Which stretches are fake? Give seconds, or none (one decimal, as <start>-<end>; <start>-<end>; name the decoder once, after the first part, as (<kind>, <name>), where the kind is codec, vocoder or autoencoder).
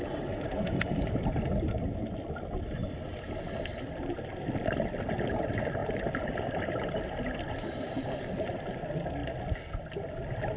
2.8-3.4 (vocoder, BigVGAN v2); 5.8-8.5